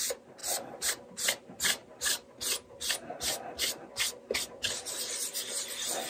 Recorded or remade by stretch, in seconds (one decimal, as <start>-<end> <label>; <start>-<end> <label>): 0.0-0.4 recorded; 0.4-0.9 remade; 0.9-6.1 recorded